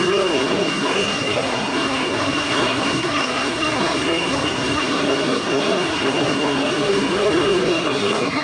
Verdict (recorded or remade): remade